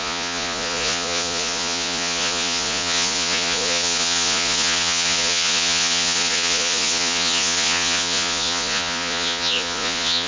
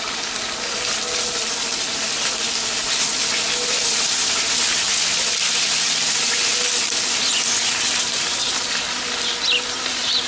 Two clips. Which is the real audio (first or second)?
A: second